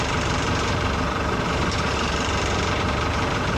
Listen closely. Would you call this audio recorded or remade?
remade